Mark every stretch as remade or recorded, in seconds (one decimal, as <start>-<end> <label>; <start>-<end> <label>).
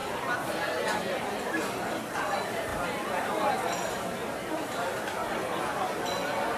0.0-4.2 recorded; 4.2-5.0 remade; 5.0-6.6 recorded